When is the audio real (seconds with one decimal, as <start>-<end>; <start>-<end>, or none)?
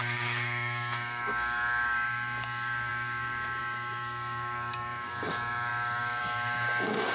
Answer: none